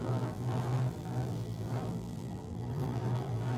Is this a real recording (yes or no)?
no